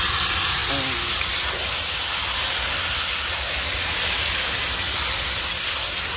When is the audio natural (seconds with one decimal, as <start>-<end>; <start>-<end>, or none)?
0.0-6.2